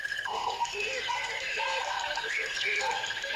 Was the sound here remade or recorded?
remade